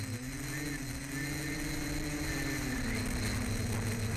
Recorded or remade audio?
recorded